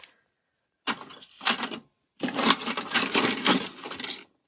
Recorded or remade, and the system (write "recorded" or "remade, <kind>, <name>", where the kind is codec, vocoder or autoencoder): recorded